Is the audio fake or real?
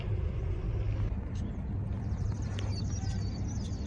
fake